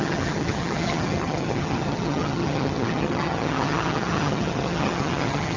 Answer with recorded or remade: remade